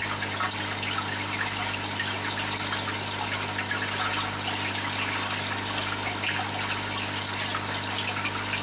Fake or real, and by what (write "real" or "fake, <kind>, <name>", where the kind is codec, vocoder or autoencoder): real